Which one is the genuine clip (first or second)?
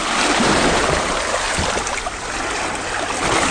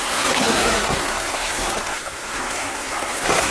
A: first